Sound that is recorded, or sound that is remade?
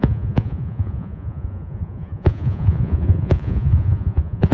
remade